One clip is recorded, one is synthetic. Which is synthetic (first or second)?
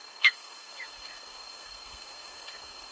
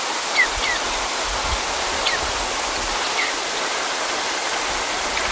first